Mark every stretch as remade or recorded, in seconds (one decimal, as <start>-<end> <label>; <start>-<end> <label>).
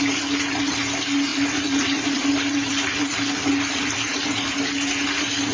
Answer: 0.0-1.3 recorded; 1.3-4.6 remade; 4.6-5.5 recorded